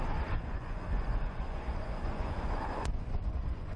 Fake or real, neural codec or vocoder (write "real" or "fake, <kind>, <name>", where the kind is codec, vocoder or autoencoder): fake, vocoder, Vocos